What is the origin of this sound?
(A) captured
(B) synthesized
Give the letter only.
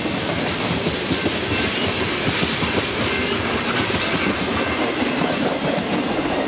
A